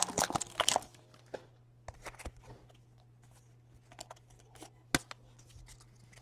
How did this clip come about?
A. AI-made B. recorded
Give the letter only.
B